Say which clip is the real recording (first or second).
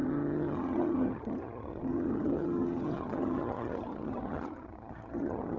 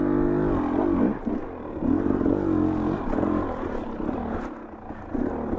second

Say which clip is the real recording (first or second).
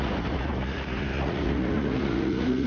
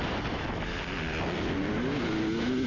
second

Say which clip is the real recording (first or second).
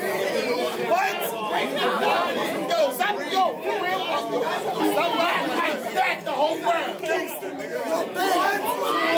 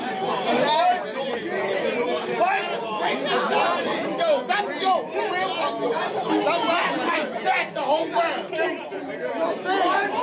second